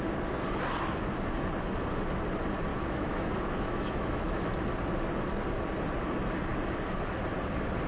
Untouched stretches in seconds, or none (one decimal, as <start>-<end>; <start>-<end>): 0.0-2.7; 4.5-7.9